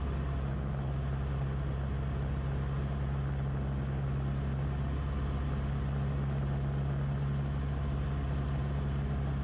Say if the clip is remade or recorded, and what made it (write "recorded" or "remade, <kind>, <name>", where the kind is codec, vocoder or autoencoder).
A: recorded